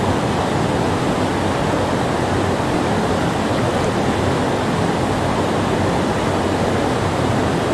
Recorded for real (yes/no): yes